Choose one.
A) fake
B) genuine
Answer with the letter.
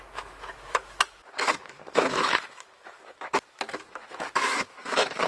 A